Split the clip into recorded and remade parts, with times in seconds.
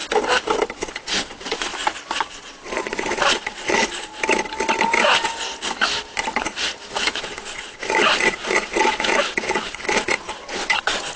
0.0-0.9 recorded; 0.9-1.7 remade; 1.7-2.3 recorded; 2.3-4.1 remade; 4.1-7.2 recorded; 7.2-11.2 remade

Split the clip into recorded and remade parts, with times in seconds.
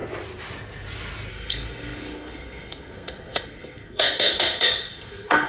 0.0-1.3 recorded; 1.3-5.5 remade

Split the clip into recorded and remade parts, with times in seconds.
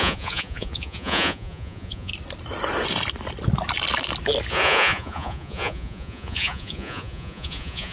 0.0-2.1 remade; 2.1-4.5 recorded; 4.5-7.9 remade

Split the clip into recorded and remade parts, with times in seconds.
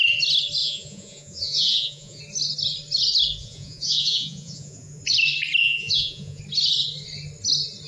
0.0-0.6 recorded; 0.6-2.2 remade; 2.2-3.4 recorded; 3.4-5.0 remade; 5.0-5.6 recorded; 5.6-6.4 remade; 6.4-7.9 recorded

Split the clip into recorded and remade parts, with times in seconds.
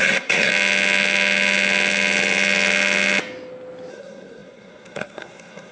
0.0-0.5 remade; 0.5-3.9 recorded; 3.9-5.7 remade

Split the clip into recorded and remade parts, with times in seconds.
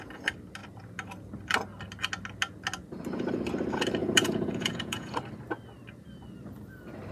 0.0-4.0 recorded; 4.0-5.1 remade; 5.1-7.1 recorded